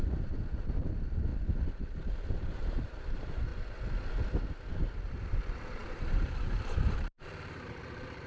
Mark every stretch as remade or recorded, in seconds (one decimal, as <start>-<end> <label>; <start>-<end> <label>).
0.0-1.3 remade; 1.3-2.7 recorded; 2.7-3.5 remade; 3.5-5.2 recorded; 5.2-8.3 remade